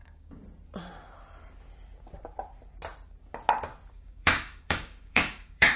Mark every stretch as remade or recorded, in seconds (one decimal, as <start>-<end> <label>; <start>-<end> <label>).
0.0-0.4 remade; 0.4-3.9 recorded; 3.9-5.8 remade